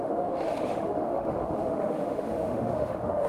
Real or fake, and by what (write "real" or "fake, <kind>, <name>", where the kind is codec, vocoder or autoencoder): fake, autoencoder, DAC-VAE